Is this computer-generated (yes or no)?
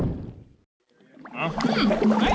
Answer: no